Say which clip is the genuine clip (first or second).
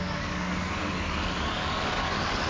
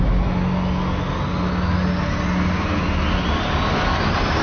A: second